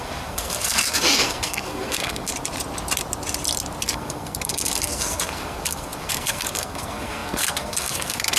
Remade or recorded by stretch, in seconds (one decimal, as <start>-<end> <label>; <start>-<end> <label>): 0.0-2.3 remade; 2.3-3.8 recorded; 3.8-8.4 remade